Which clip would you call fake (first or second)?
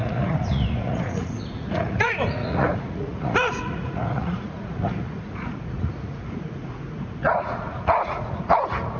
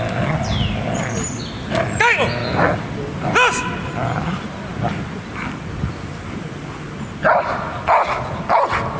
first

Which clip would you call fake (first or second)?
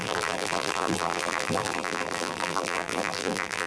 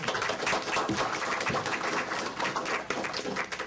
first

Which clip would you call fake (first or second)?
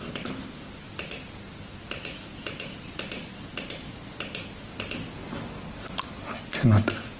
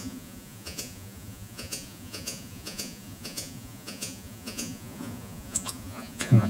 second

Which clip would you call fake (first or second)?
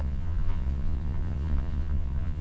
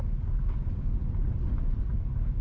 first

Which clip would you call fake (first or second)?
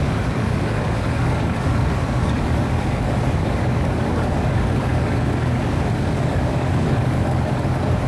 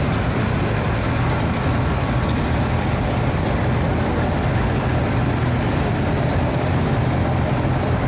first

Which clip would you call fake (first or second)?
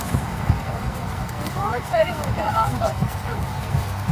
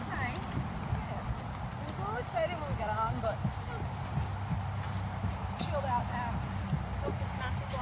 first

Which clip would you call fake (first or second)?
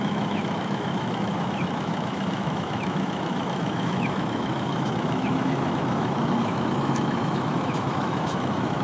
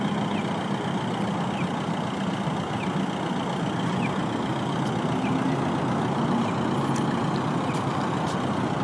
first